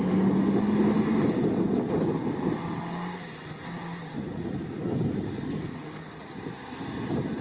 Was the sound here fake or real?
real